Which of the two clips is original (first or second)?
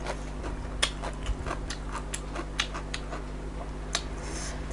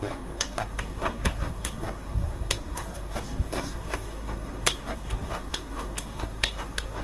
first